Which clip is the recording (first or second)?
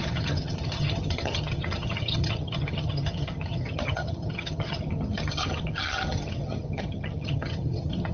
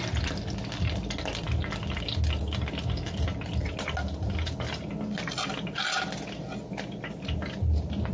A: second